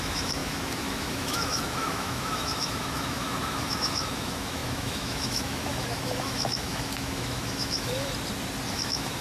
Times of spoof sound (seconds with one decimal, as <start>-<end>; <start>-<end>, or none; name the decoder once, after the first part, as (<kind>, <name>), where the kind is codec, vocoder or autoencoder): 0.0-8.1 (autoencoder, DAC-VAE); 8.7-9.2